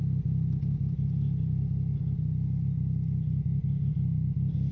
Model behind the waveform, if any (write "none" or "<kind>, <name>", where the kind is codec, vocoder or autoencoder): none